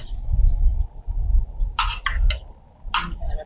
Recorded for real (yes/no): yes